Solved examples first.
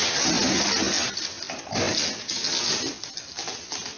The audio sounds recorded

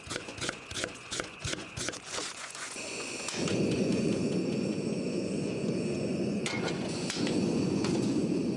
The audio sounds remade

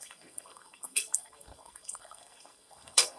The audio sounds remade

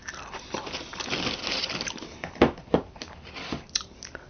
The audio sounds recorded